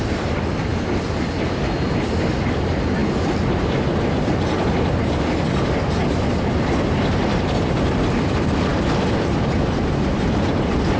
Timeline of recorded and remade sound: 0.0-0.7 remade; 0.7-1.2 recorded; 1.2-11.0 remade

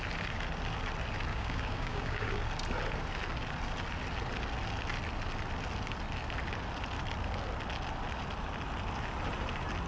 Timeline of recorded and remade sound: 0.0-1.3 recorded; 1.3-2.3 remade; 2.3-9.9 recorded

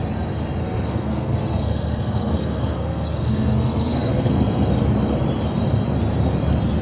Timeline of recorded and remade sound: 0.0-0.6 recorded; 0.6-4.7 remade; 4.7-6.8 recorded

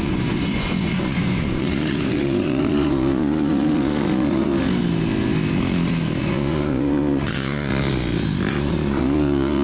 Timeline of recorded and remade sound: 0.0-4.5 remade; 4.5-6.2 recorded; 6.2-7.7 remade; 7.7-8.5 recorded; 8.5-9.6 remade

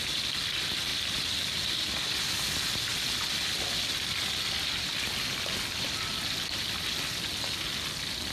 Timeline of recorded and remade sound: 0.0-8.3 recorded

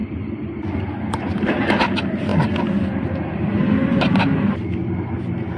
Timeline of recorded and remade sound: 0.0-0.9 remade; 0.9-5.6 recorded